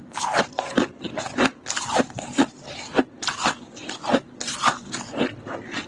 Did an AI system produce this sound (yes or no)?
yes